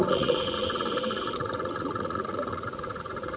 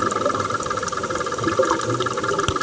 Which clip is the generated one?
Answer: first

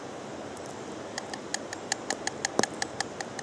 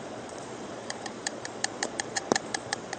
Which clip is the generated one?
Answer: second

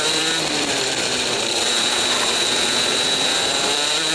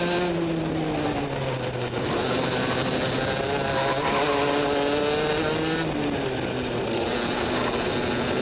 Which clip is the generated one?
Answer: first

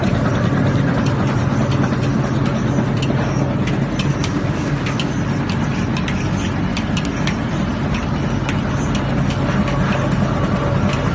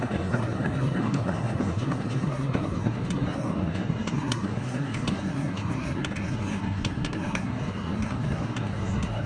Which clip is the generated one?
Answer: second